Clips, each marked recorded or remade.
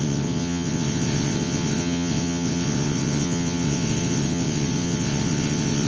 remade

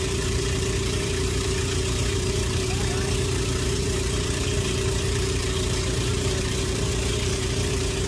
remade